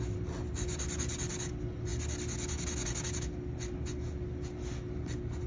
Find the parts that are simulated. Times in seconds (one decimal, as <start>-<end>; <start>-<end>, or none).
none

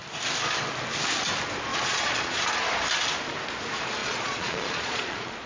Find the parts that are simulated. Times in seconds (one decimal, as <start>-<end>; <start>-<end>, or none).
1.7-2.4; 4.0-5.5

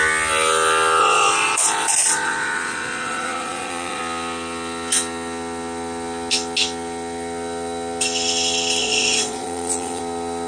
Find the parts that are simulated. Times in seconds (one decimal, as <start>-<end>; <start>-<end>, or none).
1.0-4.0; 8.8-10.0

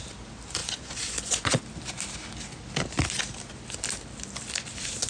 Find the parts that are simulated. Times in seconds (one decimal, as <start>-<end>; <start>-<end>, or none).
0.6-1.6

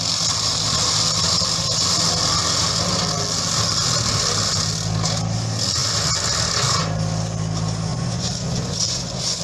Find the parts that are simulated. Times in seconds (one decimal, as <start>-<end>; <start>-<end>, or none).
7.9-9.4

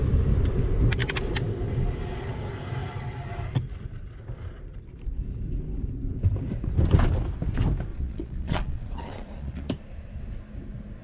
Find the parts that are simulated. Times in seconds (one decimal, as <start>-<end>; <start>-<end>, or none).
7.9-9.7

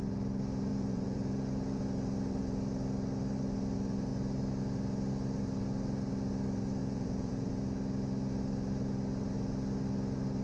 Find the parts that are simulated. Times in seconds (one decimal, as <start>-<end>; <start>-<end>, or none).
0.7-1.8; 6.8-7.5